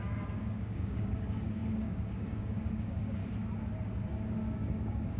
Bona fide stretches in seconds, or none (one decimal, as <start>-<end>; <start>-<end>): 3.2-3.8